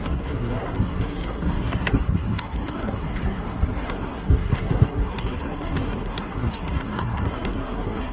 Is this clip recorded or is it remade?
remade